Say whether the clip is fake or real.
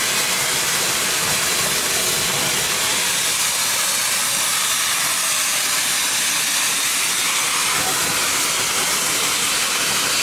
real